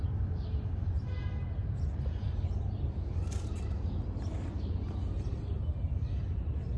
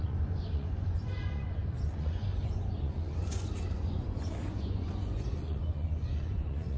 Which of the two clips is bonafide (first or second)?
first